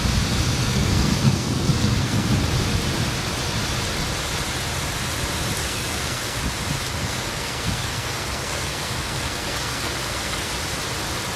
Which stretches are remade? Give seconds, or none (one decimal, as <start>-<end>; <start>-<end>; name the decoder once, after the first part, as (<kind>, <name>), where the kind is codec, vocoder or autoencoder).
0.6-2.3 (codec, SNAC); 5.6-6.4; 7.0-10.5